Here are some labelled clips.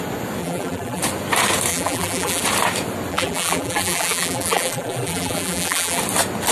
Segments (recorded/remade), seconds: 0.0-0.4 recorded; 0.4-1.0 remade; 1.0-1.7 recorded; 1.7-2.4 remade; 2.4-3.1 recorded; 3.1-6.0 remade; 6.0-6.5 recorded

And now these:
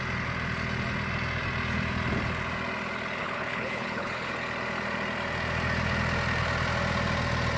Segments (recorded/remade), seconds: 0.0-3.2 recorded; 3.2-4.3 remade; 4.3-7.6 recorded